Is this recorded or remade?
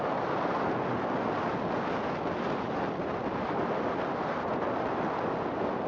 recorded